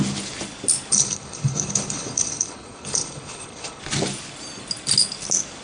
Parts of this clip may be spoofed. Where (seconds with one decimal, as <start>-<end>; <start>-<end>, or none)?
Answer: 0.9-3.8